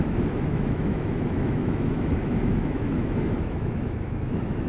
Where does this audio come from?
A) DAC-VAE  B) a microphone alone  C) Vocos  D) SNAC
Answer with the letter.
A